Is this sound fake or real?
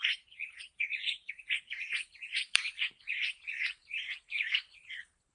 fake